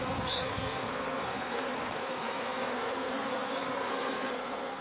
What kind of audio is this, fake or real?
fake